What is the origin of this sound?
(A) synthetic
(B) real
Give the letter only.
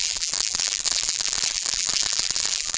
A